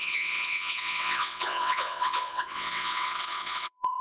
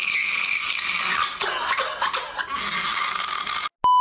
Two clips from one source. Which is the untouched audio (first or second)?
second